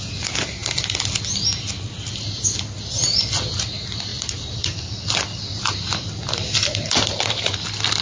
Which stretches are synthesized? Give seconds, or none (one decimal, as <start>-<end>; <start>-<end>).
4.1-8.0